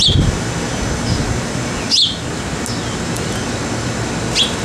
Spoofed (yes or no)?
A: no